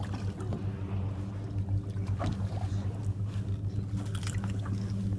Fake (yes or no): no